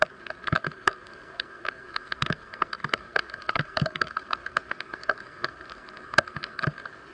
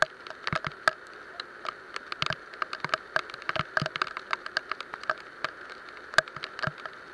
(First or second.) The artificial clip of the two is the first